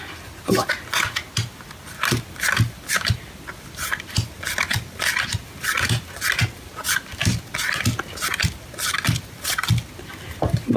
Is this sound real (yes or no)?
yes